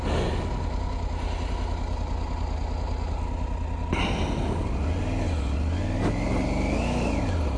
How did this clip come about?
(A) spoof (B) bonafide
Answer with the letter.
B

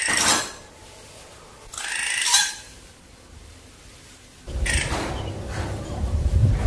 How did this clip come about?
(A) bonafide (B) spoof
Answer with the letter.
A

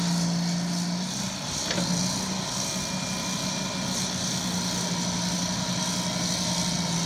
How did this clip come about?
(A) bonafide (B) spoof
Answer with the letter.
A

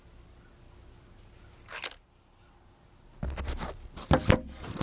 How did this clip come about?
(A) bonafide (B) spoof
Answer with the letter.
A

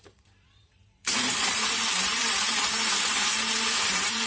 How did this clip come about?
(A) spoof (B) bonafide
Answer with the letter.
A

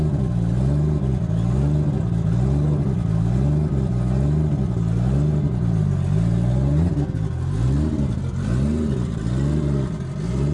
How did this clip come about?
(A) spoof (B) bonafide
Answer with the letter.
B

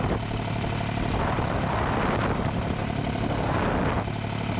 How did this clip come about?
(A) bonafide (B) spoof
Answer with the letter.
A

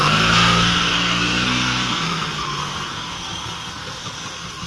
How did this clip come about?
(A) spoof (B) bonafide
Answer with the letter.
A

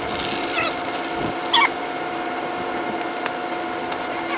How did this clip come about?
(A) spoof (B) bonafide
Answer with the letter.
B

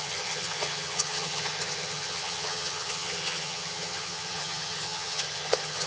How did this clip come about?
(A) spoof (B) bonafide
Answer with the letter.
A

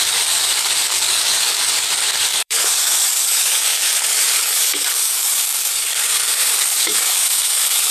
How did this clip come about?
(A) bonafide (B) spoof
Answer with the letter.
B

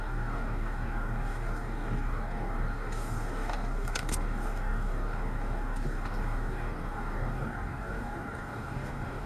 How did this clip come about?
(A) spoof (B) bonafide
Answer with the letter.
A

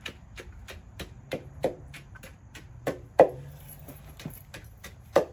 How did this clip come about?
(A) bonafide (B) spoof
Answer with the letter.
B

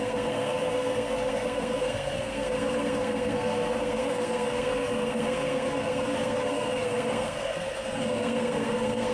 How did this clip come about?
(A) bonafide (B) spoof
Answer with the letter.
B